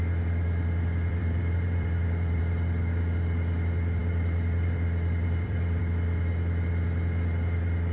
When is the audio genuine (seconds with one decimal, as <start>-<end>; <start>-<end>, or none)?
0.0-1.1; 2.4-4.0; 5.8-7.9